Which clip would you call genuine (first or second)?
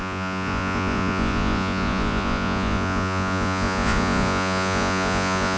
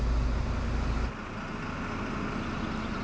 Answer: second